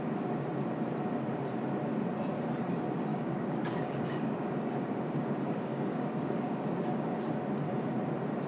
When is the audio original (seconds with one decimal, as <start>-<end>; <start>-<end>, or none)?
0.0-3.1; 7.3-8.5